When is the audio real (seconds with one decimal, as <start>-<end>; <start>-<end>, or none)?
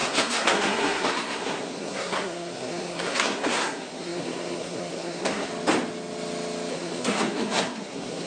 5.5-6.7